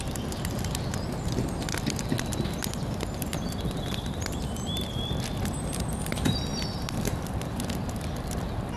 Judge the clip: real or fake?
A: real